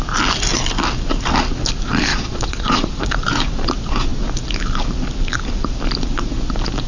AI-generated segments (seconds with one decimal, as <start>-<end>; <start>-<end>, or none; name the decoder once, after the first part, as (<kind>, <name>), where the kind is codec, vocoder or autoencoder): 2.1-3.1 (vocoder, Vocos)